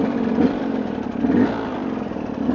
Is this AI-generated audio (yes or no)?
no